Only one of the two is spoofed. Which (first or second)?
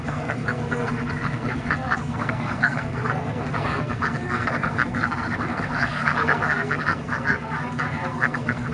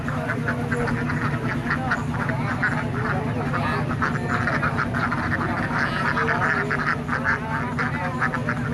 first